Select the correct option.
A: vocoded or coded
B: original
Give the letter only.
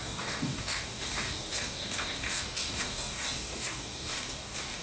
A